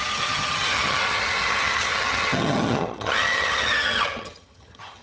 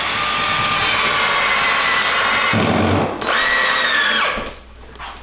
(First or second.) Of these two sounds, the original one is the second